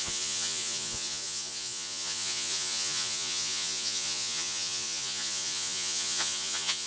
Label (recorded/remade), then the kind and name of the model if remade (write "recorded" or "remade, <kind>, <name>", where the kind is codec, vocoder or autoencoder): remade, vocoder, Vocos